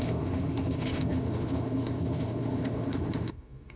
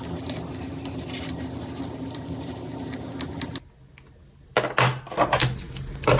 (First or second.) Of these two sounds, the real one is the second